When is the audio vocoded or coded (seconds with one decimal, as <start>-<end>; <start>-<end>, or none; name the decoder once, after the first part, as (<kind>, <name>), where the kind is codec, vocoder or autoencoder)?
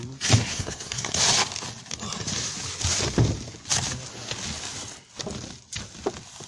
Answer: 0.5-1.2 (codec, SNAC)